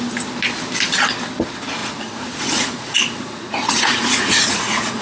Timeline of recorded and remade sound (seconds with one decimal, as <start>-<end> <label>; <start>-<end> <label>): 0.0-1.8 recorded; 1.8-5.0 remade